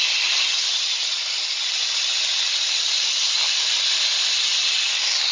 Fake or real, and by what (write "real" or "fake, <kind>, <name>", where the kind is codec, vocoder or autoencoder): real